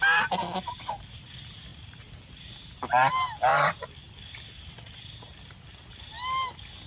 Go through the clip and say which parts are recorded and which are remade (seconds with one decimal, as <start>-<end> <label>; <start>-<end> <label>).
0.0-6.9 recorded